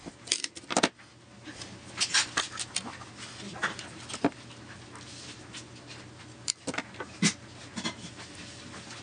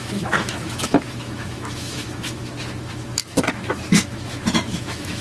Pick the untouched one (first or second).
first